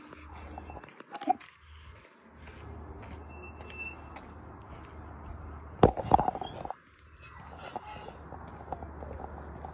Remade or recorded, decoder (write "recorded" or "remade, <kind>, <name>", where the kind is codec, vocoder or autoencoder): recorded